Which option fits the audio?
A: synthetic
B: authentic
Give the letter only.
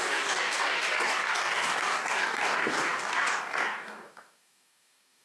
A